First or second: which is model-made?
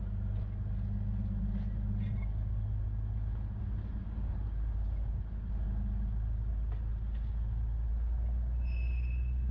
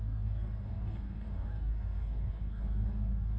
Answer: second